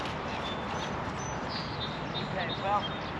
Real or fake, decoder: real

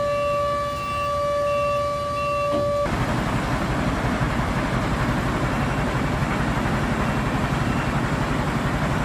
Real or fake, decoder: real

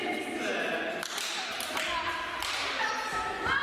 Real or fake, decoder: real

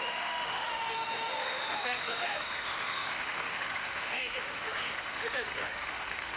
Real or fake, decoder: fake, autoencoder, DAC-VAE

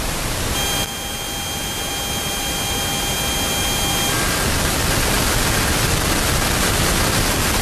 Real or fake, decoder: real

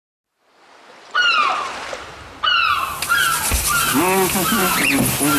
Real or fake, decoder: real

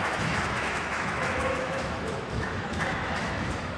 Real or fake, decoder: fake, autoencoder, DAC-VAE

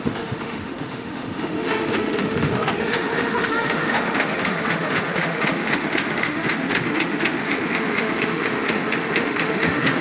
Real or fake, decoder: fake, autoencoder, DAC-VAE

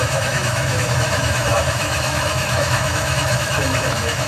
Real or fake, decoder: fake, autoencoder, DAC-VAE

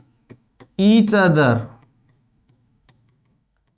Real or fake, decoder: fake, autoencoder, DAC-VAE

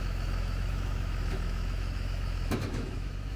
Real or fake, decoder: fake, autoencoder, DAC-VAE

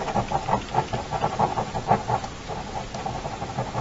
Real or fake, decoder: real